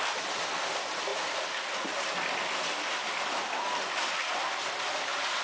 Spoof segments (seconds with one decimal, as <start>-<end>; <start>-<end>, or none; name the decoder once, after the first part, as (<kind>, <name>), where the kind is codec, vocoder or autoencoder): 0.0-5.4 (vocoder, BigVGAN v2)